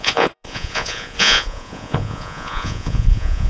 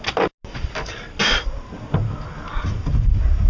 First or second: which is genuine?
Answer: second